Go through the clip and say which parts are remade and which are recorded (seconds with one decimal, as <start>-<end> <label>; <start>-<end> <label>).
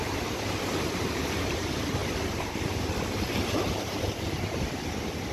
0.0-2.0 remade; 2.0-5.3 recorded